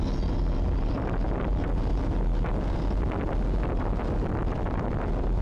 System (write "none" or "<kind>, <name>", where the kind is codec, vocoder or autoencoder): none